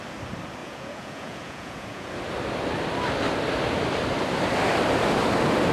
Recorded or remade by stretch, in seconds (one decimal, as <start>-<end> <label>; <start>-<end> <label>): 0.0-0.6 recorded; 0.6-2.1 remade; 2.1-5.7 recorded